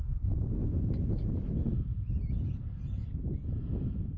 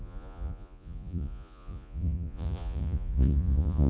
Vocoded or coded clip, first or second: second